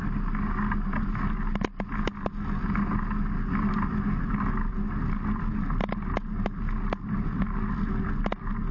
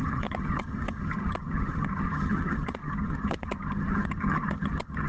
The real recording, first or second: first